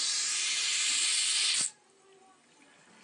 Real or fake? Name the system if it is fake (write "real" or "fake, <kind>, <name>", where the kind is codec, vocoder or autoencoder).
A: real